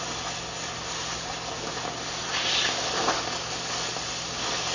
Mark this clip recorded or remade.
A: recorded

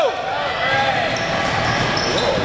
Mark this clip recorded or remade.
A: recorded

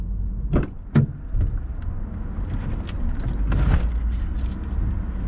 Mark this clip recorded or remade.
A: recorded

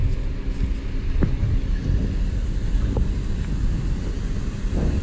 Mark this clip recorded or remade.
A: recorded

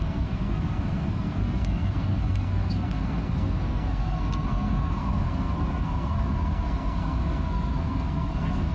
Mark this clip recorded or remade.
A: remade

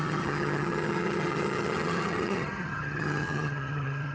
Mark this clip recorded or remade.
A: remade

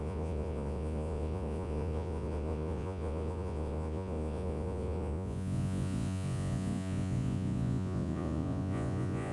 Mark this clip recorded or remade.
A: remade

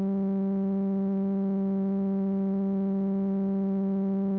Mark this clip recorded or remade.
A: recorded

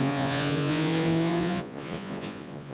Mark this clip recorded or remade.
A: remade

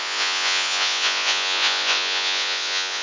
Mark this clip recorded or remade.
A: remade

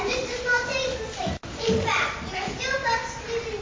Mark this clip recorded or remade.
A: recorded